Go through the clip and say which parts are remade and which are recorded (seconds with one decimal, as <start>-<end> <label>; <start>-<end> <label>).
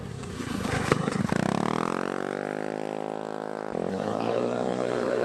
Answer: 0.0-1.2 remade; 1.2-3.9 recorded; 3.9-5.2 remade